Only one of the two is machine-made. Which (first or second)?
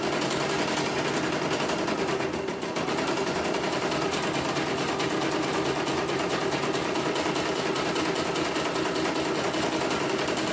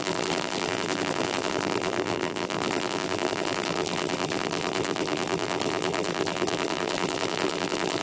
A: second